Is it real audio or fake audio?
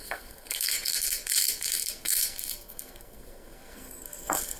fake